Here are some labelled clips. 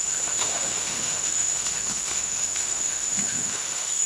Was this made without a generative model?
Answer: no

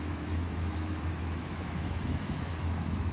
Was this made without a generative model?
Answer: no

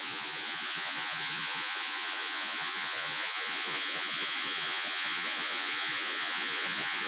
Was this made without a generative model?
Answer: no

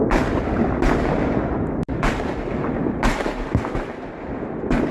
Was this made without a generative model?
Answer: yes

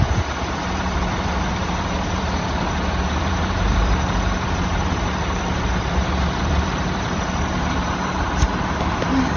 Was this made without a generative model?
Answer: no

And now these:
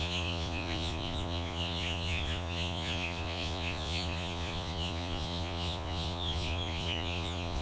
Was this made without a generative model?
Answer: no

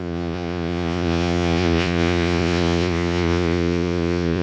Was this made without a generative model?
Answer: no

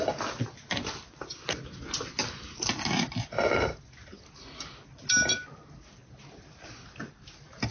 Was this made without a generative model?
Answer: yes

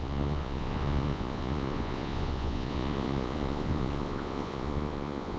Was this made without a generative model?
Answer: no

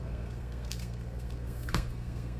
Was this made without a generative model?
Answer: no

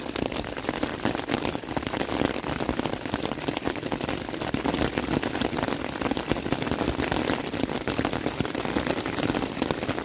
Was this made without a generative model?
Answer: yes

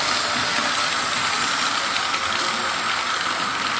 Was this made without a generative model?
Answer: yes